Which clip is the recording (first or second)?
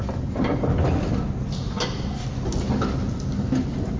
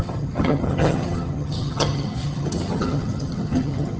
first